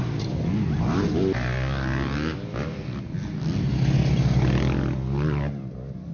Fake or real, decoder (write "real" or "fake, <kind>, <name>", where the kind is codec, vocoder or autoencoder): real